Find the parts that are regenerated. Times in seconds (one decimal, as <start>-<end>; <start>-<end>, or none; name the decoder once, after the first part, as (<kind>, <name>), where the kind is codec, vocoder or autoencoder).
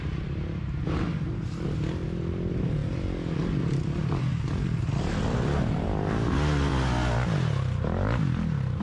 0.0-6.7 (vocoder, BigVGAN v2)